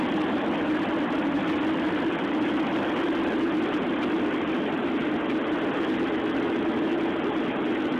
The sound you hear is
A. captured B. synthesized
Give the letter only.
A